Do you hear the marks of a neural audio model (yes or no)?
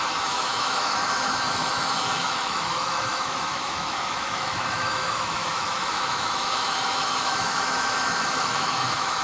yes